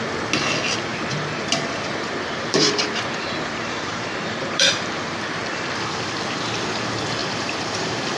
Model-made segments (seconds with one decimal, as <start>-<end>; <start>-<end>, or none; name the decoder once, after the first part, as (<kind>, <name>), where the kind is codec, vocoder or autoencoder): 0.9-5.2 (vocoder, BigVGAN v2); 7.2-8.2